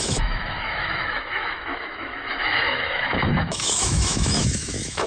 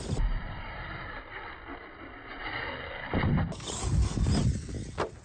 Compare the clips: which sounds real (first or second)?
second